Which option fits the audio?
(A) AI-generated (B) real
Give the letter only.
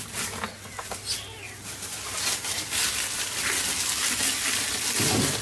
B